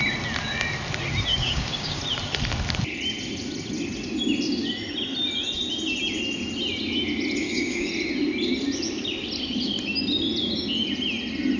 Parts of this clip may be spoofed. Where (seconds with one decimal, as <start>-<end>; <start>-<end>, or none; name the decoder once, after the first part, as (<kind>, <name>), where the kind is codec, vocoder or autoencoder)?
1.3-2.0 (codec, DAC); 7.4-7.9